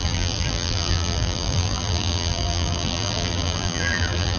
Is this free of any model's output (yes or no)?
no